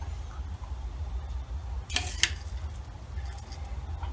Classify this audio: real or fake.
real